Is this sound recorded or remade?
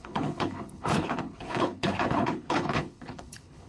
remade